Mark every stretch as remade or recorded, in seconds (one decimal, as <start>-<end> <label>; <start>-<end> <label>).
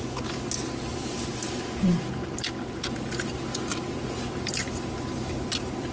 0.0-1.4 recorded; 1.4-4.9 remade; 4.9-5.9 recorded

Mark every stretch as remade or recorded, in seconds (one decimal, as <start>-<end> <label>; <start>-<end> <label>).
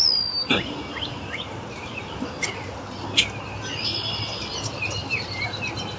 0.0-5.0 recorded; 5.0-6.0 remade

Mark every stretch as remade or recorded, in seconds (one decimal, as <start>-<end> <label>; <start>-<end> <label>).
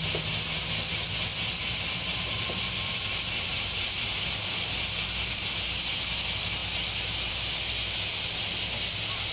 0.0-9.3 recorded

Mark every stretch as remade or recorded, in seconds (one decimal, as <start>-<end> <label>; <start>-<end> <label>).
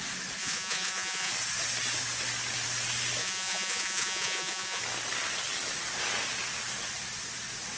0.0-0.4 recorded; 0.4-1.3 remade; 1.3-3.2 recorded; 3.2-4.8 remade; 4.8-7.8 recorded